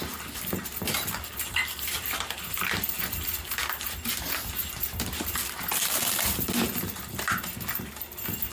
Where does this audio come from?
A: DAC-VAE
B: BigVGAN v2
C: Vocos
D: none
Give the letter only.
D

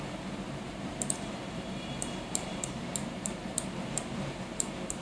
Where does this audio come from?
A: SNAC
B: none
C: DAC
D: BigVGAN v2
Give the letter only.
D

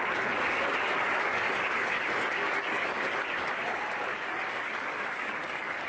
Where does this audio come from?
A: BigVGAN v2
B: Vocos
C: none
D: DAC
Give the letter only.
D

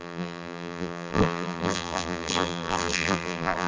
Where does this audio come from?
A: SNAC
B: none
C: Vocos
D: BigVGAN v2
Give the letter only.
D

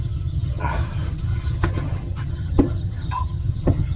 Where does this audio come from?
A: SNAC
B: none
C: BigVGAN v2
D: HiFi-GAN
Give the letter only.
D